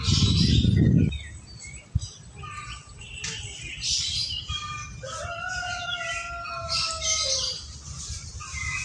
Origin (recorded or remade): recorded